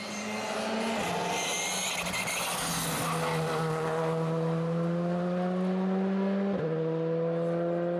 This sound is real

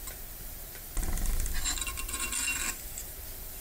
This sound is fake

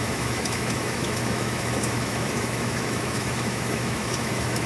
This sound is fake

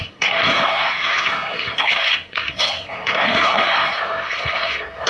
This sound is fake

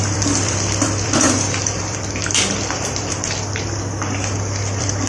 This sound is fake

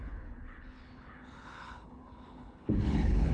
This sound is fake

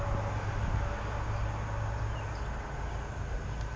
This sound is real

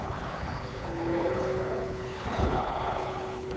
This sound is fake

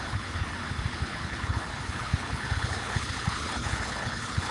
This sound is fake